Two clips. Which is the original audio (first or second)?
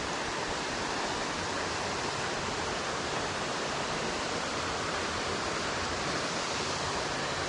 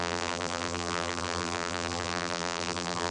first